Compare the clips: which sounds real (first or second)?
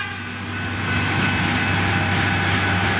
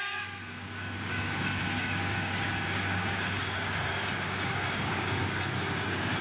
first